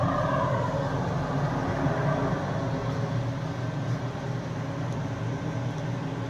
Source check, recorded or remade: recorded